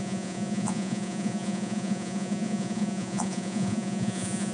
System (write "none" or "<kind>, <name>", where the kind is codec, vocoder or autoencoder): vocoder, Vocos